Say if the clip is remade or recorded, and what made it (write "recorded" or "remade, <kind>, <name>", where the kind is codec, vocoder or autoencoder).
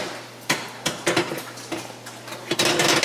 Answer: recorded